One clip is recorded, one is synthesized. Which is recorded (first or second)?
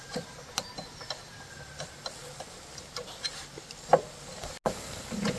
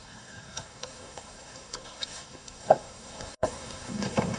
first